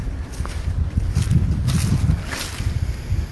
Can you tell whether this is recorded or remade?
recorded